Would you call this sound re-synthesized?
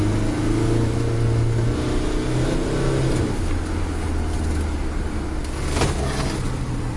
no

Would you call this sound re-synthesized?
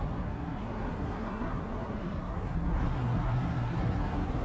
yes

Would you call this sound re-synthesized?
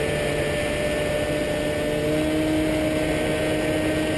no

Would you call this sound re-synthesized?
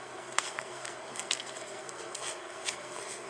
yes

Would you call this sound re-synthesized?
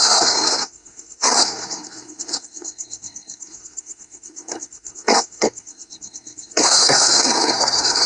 yes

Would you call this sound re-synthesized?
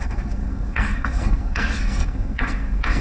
yes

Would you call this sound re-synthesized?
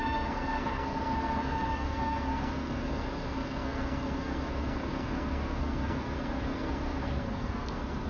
yes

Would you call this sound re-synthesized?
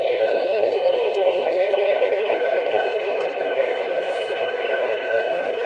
yes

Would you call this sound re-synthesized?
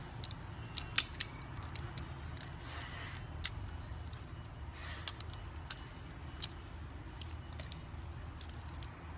no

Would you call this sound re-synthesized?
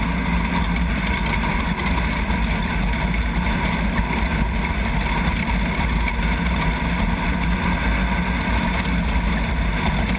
no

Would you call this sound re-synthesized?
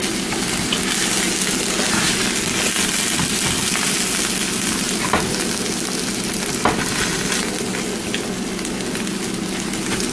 no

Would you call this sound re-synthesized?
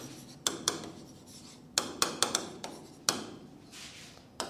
no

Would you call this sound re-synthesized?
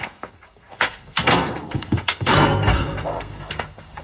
yes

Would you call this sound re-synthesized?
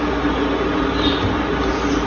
no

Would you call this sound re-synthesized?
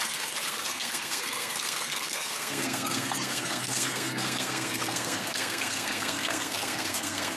yes